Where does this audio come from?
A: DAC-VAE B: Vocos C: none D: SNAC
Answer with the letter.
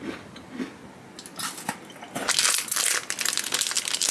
C